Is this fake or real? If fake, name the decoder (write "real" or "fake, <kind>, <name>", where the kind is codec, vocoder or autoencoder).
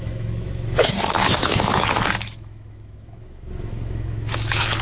fake, autoencoder, DAC-VAE